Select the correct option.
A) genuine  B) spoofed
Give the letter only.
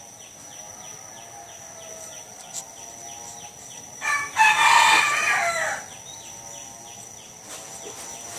A